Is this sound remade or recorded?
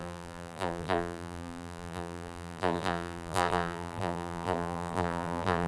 remade